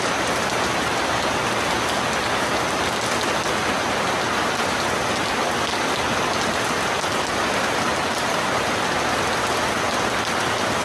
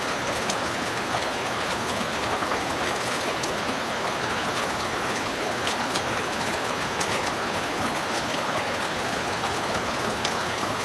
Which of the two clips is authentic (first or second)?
first